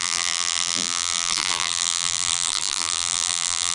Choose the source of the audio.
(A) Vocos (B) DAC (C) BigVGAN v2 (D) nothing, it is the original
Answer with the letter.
C